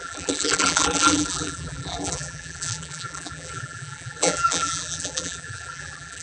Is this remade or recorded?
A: remade